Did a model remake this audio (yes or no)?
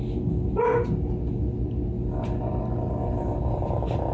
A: no